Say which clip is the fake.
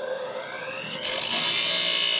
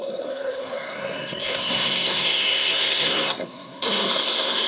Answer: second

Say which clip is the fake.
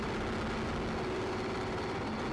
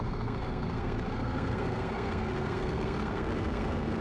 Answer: second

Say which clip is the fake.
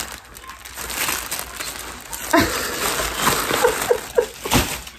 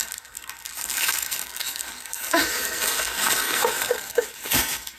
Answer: second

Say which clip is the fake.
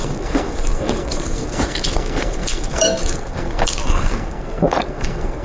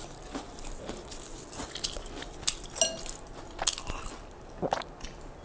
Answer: first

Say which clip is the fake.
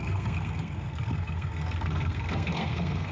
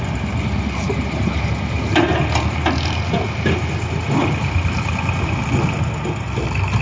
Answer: first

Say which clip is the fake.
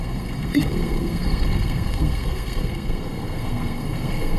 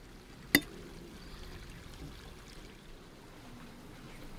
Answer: first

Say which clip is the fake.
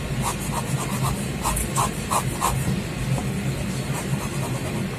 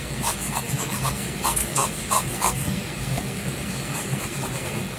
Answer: second